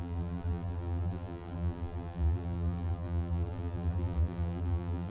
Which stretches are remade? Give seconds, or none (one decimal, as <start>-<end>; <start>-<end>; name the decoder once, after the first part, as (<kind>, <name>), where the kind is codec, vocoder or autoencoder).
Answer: 0.0-5.1 (vocoder, BigVGAN v2)